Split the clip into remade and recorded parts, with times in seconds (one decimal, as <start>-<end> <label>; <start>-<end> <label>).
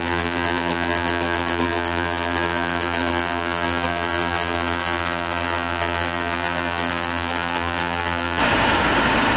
0.0-8.4 remade; 8.4-9.4 recorded